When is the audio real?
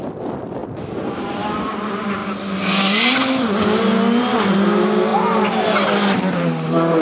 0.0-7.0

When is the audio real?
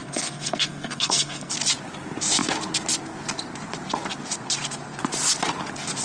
1.5-6.0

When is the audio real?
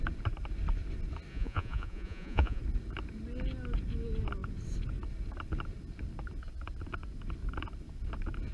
0.0-1.3; 2.6-8.5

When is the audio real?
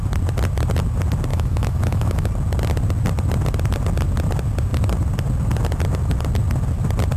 0.0-1.3; 2.3-7.2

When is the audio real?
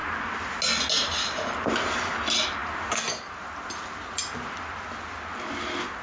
0.0-6.0